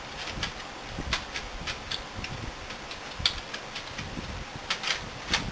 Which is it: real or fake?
real